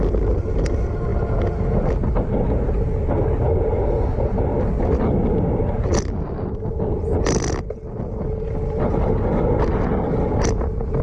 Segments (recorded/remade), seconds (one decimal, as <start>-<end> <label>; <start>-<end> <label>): 0.0-11.0 recorded